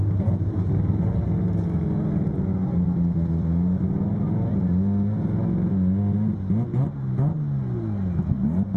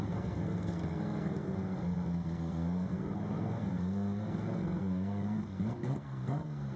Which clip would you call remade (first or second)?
second